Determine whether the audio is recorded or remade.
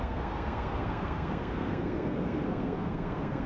remade